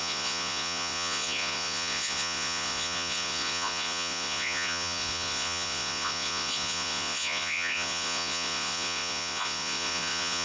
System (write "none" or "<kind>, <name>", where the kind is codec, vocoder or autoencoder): vocoder, Vocos